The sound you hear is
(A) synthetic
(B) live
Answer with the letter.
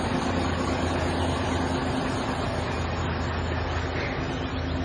B